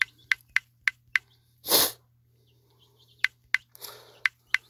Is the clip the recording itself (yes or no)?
yes